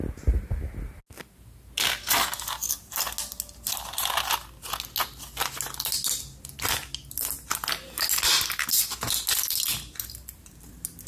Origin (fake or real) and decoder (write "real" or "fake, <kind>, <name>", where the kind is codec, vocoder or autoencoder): real